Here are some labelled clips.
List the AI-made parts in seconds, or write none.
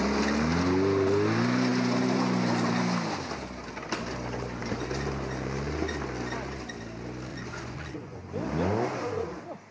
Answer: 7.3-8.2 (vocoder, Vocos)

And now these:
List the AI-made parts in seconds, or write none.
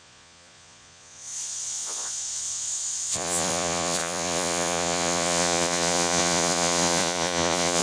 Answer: 0.0-7.8 (vocoder, Vocos)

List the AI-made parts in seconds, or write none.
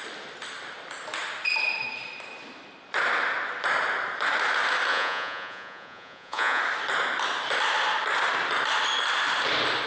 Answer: 4.9-6.6 (vocoder, Vocos)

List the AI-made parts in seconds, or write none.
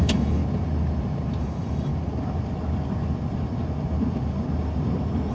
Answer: 0.0-0.4 (autoencoder, DAC-VAE); 1.4-1.9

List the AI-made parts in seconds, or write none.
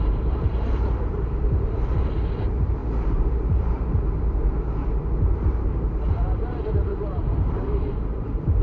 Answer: 0.0-8.6 (vocoder, BigVGAN v2)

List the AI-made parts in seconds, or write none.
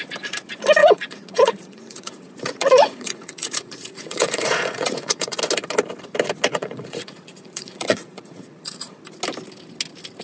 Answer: 0.8-5.4 (vocoder, Vocos); 6.5-9.0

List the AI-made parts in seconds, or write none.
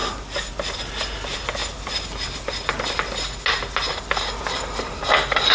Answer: none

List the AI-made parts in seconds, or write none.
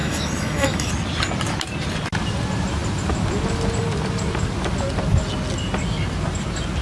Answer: 0.0-0.9 (autoencoder, DAC-VAE)